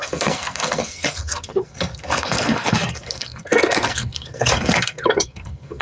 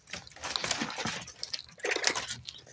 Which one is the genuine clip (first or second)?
second